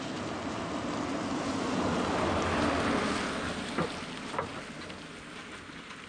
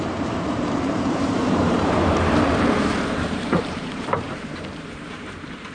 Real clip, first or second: first